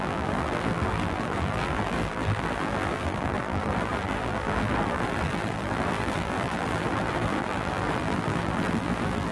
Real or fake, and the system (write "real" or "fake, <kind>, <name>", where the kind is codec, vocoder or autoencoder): fake, vocoder, BigVGAN v2